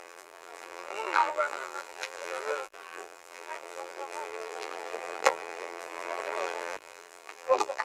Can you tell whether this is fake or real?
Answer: fake